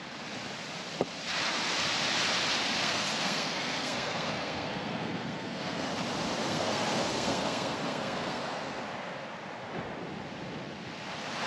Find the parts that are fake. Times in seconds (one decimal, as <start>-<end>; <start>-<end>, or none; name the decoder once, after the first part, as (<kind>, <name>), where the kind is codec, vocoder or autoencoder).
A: 2.8-5.9 (codec, SNAC); 6.4-8.8